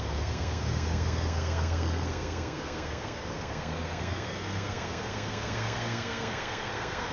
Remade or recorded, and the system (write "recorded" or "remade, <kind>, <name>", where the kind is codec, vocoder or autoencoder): remade, codec, SNAC